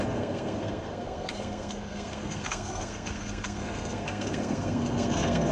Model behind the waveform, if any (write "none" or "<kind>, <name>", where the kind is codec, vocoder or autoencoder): codec, SNAC